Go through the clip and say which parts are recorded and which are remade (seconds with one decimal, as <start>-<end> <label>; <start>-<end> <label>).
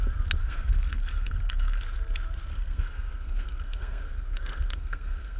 0.0-0.4 recorded; 0.4-1.8 remade; 1.8-2.5 recorded; 2.5-5.4 remade